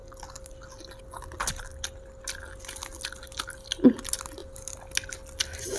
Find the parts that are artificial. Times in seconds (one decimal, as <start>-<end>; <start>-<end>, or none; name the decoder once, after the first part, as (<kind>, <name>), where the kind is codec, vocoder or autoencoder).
none